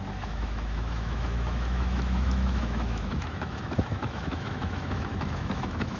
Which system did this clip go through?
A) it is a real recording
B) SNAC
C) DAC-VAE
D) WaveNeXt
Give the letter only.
C